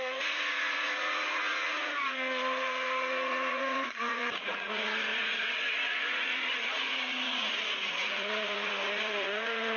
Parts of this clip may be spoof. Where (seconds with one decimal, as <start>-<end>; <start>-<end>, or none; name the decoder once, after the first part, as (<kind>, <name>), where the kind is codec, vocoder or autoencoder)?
0.0-9.8 (vocoder, Vocos)